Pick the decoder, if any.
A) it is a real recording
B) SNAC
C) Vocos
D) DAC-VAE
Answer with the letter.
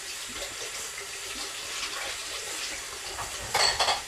A